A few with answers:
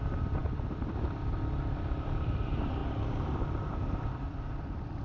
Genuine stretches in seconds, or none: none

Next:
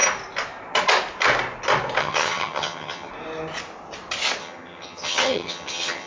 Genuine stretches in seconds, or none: 0.0-2.0; 3.1-4.4

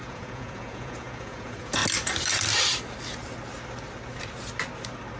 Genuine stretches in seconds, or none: 1.8-5.2

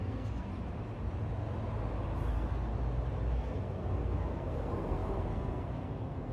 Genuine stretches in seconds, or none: 0.5-2.3; 2.7-3.3

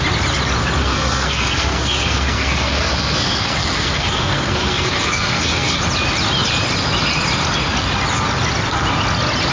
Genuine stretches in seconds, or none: 0.0-0.8; 5.8-9.5